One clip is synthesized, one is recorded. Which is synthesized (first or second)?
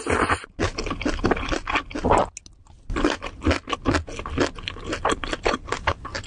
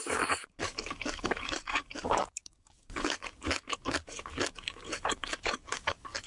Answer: second